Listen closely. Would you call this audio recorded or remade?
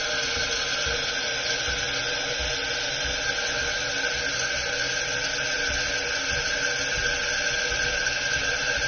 recorded